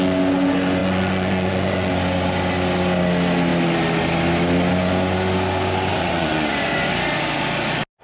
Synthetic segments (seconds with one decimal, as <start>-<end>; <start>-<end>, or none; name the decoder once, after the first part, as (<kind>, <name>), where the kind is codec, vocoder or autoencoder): 0.8-1.9 (vocoder, Vocos); 5.9-6.9